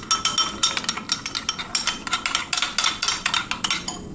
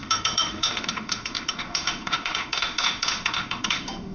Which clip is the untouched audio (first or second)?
first